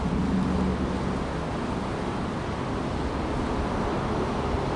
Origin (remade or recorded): recorded